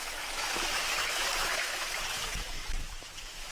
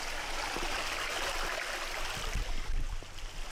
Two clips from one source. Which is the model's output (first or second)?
first